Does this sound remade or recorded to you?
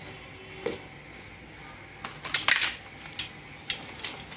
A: recorded